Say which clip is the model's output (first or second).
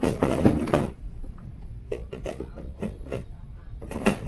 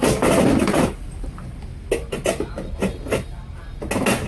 first